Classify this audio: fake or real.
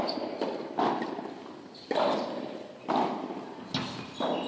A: real